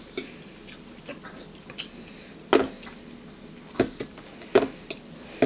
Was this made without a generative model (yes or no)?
yes